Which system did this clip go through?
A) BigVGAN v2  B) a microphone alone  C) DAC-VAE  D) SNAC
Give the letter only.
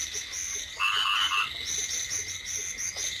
B